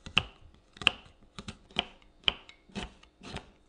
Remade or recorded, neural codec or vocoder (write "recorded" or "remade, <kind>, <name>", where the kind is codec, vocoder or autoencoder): remade, vocoder, Vocos